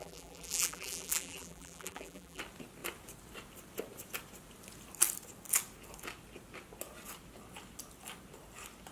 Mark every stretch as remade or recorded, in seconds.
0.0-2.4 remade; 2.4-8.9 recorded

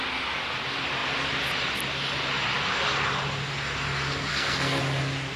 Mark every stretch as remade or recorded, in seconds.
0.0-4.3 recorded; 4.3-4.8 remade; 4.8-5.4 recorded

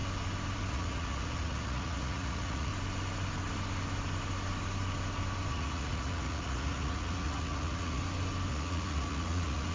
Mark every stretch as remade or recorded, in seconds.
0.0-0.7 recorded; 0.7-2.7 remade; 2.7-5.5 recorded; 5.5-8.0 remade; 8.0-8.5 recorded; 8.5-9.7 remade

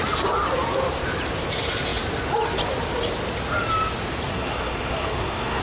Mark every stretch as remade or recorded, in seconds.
0.0-4.3 recorded; 4.3-5.6 remade

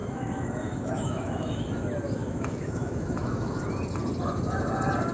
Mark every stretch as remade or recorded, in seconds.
0.0-1.7 remade; 1.7-2.2 recorded; 2.2-3.6 remade; 3.6-5.1 recorded

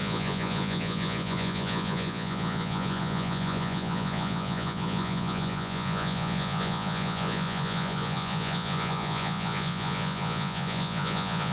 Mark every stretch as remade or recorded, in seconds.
0.0-11.5 remade